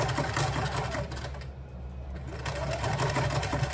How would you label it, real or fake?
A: real